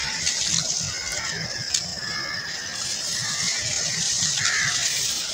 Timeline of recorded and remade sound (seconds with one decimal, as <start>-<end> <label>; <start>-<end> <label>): 0.0-1.0 remade; 1.0-1.5 recorded; 1.5-1.9 remade; 1.9-4.0 recorded; 4.0-5.3 remade